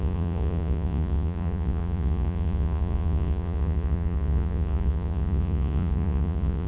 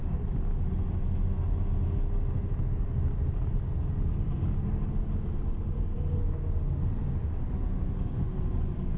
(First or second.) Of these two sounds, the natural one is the second